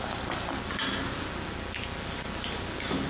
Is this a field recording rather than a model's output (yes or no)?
yes